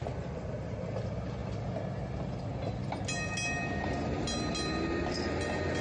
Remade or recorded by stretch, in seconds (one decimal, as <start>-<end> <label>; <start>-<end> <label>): 0.0-5.8 recorded